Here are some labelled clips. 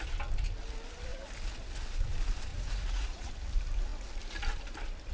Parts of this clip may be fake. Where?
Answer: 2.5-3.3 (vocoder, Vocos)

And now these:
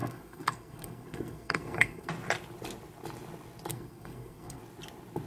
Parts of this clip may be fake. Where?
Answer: 0.0-2.1 (codec, SNAC); 3.7-4.6